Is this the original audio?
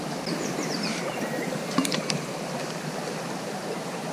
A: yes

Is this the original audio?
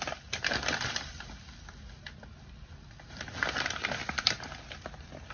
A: no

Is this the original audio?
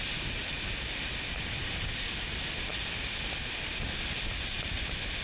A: yes